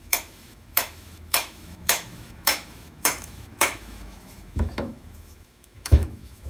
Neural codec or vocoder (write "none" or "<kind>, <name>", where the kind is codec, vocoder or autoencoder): autoencoder, DAC-VAE